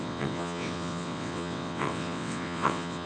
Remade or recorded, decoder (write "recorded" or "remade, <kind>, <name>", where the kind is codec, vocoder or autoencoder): remade, vocoder, WaveNeXt